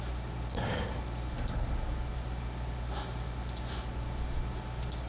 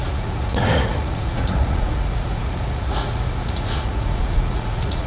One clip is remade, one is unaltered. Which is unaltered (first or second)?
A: first